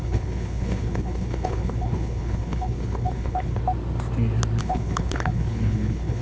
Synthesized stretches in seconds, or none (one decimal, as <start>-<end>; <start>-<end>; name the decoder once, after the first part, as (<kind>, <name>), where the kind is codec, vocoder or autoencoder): 0.0-3.6 (codec, HILCodec); 4.6-6.2